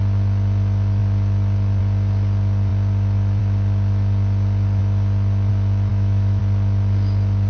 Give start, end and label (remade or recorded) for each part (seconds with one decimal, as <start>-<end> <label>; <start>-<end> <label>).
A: 0.0-5.9 recorded; 5.9-6.4 remade; 6.4-7.5 recorded